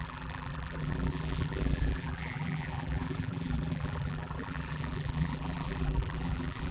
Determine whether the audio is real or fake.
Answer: fake